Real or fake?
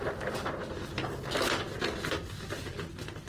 real